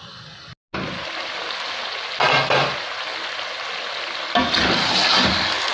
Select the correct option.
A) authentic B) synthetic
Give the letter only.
A